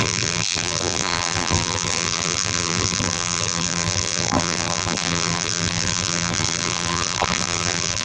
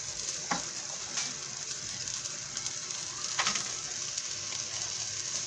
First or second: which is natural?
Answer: second